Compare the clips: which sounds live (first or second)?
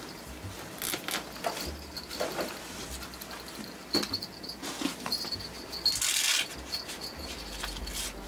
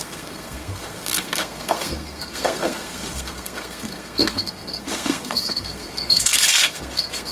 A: first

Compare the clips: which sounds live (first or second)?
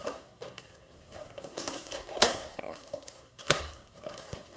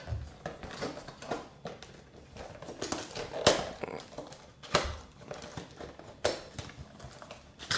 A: second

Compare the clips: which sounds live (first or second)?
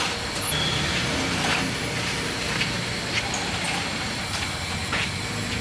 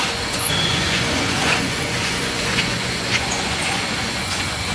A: first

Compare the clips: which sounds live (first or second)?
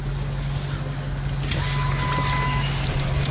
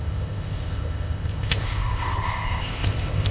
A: first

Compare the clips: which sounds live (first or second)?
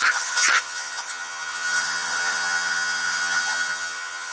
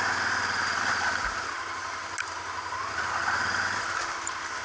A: second